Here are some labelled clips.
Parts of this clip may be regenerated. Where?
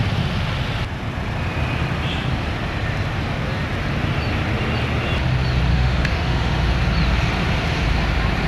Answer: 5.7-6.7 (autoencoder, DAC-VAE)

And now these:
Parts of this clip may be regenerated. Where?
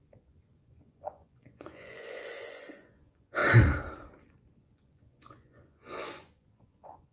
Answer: 0.0-3.4 (vocoder, Vocos); 4.6-7.1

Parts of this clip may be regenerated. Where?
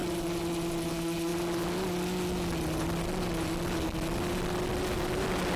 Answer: none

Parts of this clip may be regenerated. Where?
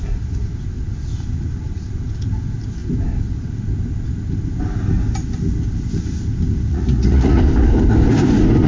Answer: 6.7-7.4 (vocoder, Vocos)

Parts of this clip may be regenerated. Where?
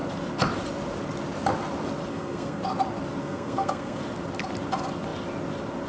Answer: 2.1-2.6 (codec, SNAC); 3.2-4.0